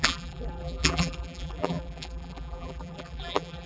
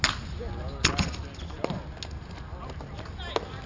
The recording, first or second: second